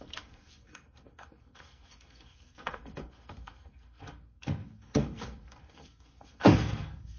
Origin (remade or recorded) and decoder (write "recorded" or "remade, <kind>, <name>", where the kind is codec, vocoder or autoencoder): remade, codec, SNAC